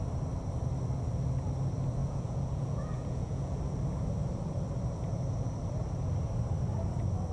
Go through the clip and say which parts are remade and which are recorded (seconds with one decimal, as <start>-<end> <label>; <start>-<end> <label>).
0.0-2.0 recorded; 2.0-3.6 remade; 3.6-7.3 recorded

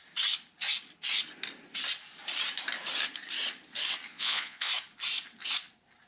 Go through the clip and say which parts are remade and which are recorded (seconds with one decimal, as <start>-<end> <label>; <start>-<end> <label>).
0.0-4.1 recorded; 4.1-4.7 remade; 4.7-6.1 recorded

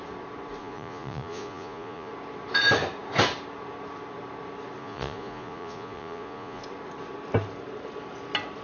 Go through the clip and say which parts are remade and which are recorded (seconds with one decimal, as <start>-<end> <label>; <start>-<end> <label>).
0.0-0.6 recorded; 0.6-2.1 remade; 2.1-4.8 recorded; 4.8-6.6 remade; 6.6-8.6 recorded

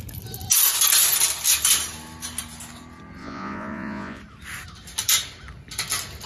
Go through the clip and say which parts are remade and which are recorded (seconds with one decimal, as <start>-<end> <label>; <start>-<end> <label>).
0.0-3.2 recorded; 3.2-4.2 remade; 4.2-6.3 recorded